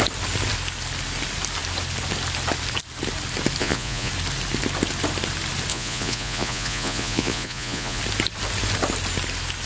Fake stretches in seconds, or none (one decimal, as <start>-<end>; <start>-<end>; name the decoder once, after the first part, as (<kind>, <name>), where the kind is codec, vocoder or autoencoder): 3.6-4.1 (vocoder, Vocos); 5.7-8.0